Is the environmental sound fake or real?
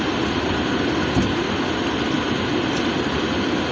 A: real